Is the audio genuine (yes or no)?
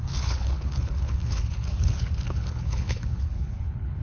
no